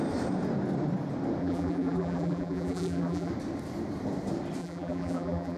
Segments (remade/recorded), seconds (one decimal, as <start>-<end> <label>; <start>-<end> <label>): 0.0-1.4 recorded; 1.4-3.3 remade; 3.3-4.6 recorded; 4.6-5.6 remade